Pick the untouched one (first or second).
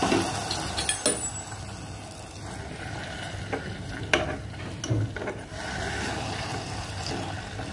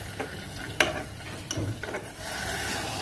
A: first